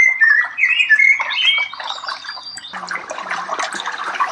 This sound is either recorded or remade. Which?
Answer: recorded